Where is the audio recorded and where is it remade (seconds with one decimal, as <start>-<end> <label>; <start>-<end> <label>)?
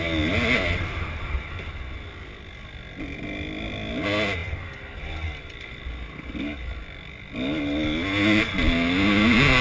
0.0-9.6 recorded